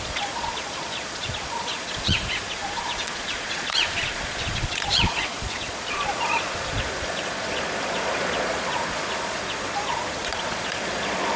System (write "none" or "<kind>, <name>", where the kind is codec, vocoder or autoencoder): vocoder, Vocos